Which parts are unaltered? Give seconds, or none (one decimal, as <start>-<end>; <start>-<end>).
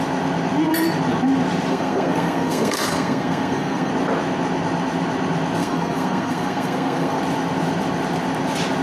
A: 0.0-1.7; 3.9-5.6; 7.2-8.8